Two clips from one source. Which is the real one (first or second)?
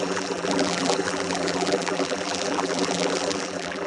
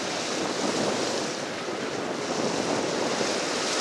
second